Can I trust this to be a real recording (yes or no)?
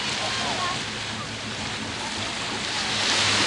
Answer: yes